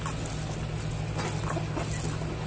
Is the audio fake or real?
real